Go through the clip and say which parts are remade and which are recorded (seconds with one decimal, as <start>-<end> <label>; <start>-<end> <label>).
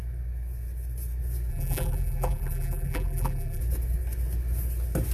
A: 0.0-1.5 recorded; 1.5-3.6 remade; 3.6-5.1 recorded